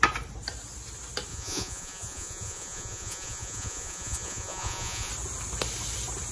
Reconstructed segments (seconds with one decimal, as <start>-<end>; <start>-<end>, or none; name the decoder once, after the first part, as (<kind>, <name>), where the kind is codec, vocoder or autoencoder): 1.3-5.1 (vocoder, Vocos)